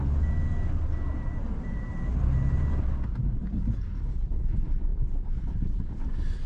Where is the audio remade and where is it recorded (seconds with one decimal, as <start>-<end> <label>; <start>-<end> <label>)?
0.0-1.1 recorded; 1.1-2.6 remade; 2.6-4.9 recorded; 4.9-6.5 remade